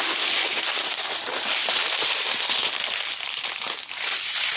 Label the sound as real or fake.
real